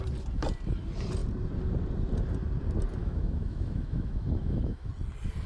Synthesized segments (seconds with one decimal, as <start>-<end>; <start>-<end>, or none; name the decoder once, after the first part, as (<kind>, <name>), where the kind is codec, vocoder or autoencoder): 3.0-4.9 (autoencoder, DAC-VAE)